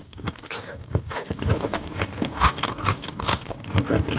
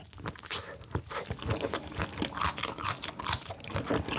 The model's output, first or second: first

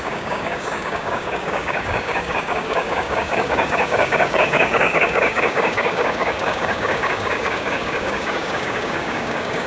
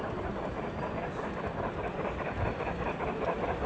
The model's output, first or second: first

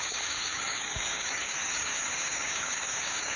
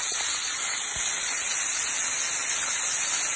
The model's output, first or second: first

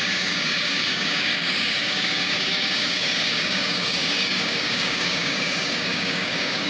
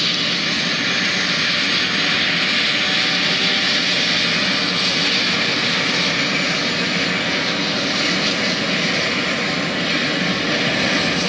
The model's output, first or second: first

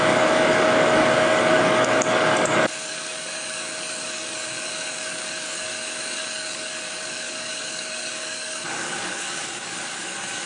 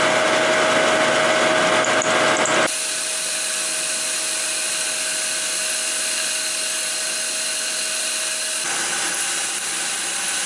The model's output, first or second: first